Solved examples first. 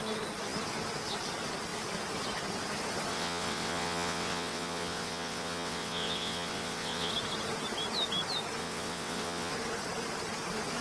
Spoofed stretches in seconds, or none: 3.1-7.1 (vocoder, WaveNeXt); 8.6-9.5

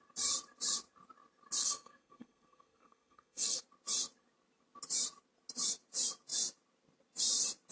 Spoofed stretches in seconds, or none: 1.6-3.6 (codec, SNAC)

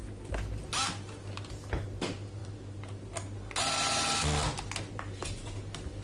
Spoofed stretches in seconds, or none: none

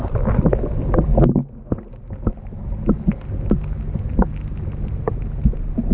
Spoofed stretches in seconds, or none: none

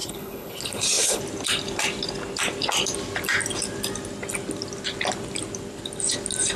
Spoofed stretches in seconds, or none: 0.0-1.2 (codec, HILCodec)

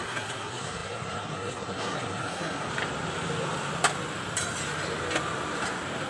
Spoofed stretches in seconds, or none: 0.0-2.7 (codec, SNAC)